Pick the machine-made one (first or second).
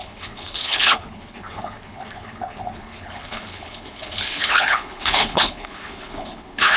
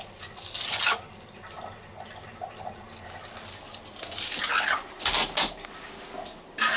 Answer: first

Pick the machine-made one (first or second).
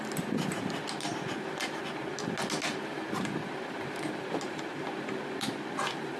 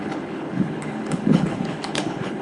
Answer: second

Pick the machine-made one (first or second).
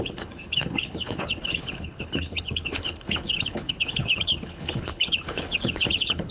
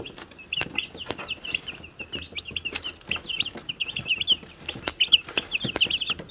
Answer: first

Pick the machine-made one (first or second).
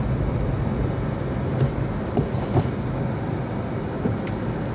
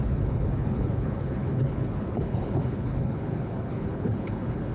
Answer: second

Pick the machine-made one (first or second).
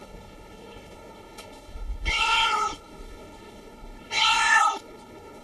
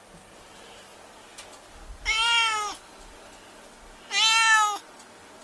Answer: first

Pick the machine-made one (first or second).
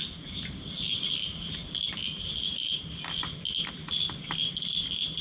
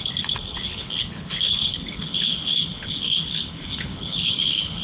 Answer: second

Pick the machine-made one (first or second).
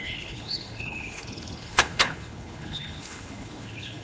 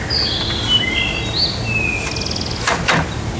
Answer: first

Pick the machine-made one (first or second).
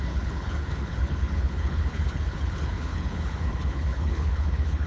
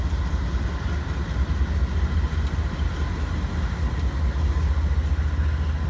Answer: first